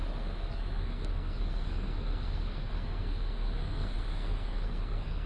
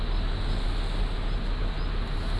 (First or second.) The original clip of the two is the second